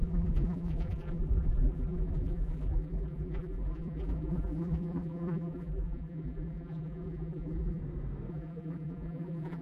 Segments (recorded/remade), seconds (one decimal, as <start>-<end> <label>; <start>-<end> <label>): 0.0-7.8 remade; 7.8-8.3 recorded; 8.3-9.6 remade